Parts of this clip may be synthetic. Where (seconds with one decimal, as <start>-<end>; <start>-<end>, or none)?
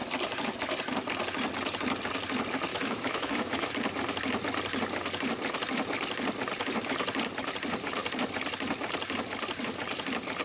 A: 2.7-3.7